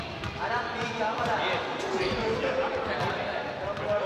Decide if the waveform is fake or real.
real